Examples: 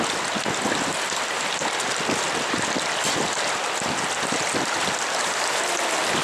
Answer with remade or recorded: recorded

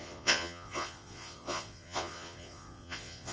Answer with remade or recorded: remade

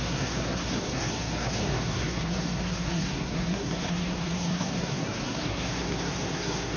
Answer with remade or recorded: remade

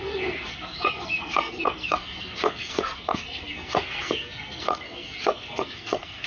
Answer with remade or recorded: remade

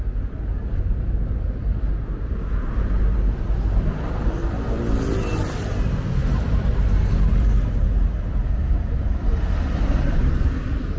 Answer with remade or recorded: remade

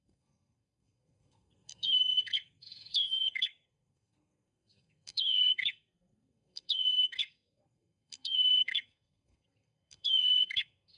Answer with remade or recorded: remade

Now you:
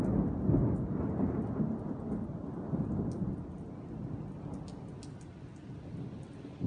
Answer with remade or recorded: recorded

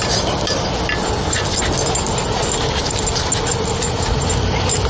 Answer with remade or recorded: recorded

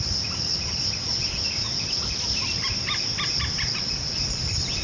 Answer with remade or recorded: recorded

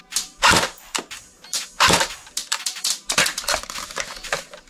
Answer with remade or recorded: remade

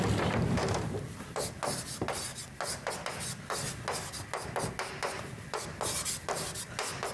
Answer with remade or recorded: recorded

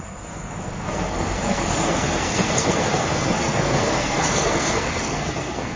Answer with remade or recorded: remade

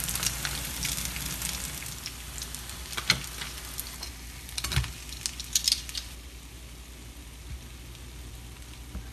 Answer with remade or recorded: recorded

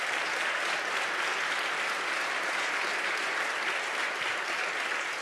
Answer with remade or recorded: recorded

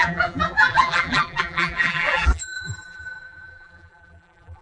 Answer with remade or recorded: remade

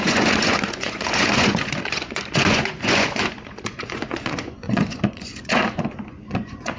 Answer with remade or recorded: remade